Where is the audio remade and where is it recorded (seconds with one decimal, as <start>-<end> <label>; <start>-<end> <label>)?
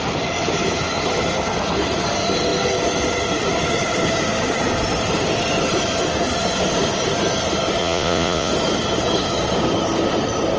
0.0-7.8 recorded; 7.8-8.5 remade; 8.5-10.6 recorded